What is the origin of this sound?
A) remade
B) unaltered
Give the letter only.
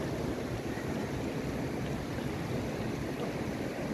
B